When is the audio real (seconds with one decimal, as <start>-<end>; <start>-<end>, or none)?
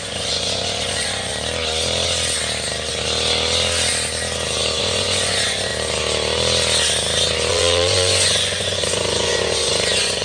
1.3-4.8; 5.7-7.5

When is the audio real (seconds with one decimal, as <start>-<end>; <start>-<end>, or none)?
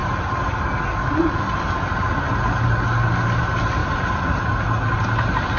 0.0-3.8; 4.5-5.6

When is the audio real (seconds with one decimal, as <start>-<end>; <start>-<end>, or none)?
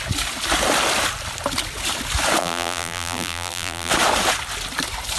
0.0-2.4; 3.9-5.2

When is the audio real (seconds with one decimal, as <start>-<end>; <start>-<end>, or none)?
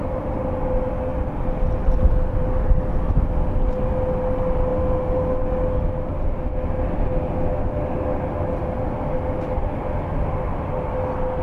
0.0-11.4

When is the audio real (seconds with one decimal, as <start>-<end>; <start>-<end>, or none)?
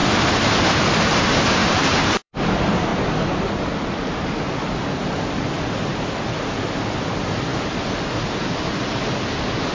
0.8-1.6; 2.3-9.7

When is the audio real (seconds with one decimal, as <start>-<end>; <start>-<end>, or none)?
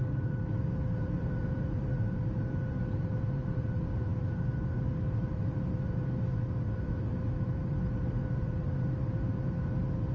none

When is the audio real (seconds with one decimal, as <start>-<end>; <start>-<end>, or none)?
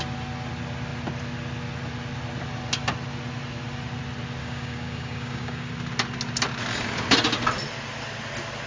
0.0-4.4; 5.7-8.7